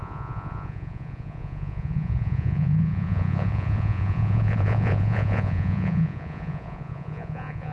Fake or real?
fake